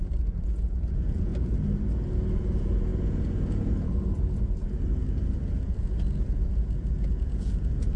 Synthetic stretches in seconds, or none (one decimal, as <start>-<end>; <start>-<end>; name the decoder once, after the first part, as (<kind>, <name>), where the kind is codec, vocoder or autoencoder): 0.0-1.3 (vocoder, Vocos); 2.3-4.6; 5.5-8.0